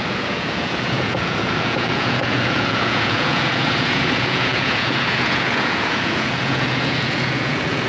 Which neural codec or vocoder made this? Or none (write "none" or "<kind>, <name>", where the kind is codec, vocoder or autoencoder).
vocoder, Vocos